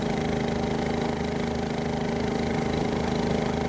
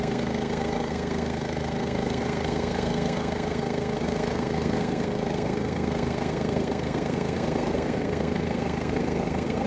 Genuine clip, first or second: first